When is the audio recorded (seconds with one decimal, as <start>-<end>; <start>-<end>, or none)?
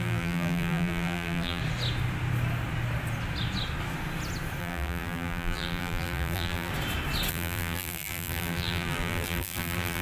1.6-4.6; 6.7-7.3